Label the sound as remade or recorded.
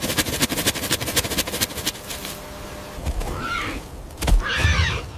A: recorded